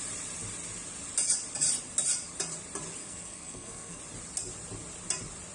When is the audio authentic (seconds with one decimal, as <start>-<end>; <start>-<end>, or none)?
0.0-3.0; 4.0-5.5